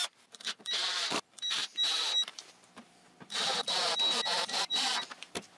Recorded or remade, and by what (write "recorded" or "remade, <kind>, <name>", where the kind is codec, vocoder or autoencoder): remade, vocoder, BigVGAN v2